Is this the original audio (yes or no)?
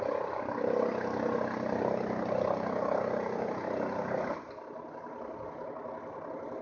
yes